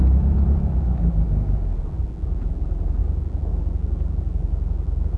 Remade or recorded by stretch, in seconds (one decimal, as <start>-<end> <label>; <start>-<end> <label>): 0.0-5.2 recorded